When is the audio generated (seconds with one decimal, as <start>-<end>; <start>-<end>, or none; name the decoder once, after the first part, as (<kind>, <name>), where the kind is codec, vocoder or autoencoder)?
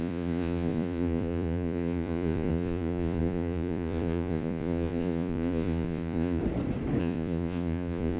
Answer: 0.0-6.4 (vocoder, Vocos); 7.0-8.2